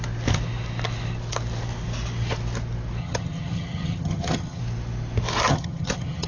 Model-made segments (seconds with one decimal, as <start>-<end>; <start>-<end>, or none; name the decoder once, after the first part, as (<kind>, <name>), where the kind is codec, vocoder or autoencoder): 3.0-4.6 (vocoder, HiFi-GAN); 5.5-6.3